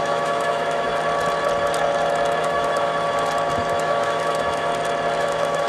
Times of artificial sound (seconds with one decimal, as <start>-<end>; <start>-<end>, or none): 0.0-0.9; 2.4-2.9; 3.7-4.7; 5.2-5.7